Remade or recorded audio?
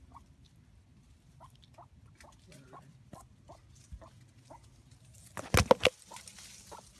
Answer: recorded